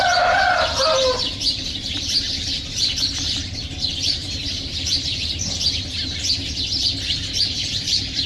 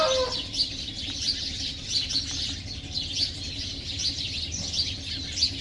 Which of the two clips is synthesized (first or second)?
first